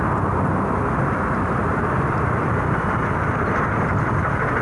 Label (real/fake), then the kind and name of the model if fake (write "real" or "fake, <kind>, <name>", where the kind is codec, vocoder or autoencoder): fake, vocoder, BigVGAN v2